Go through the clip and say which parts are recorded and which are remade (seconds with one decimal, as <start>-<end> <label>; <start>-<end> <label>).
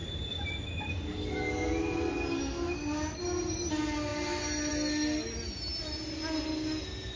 0.0-7.2 recorded